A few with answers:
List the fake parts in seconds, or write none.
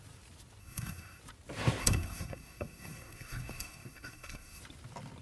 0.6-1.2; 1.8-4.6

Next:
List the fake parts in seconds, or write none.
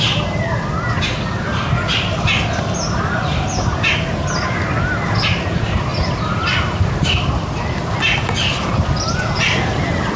none